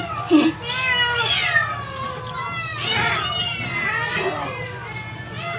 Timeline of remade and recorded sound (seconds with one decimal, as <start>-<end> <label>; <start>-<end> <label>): 0.0-5.6 recorded